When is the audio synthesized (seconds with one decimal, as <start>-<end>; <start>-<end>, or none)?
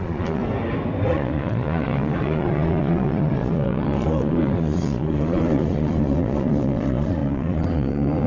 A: 0.0-0.4; 1.1-8.3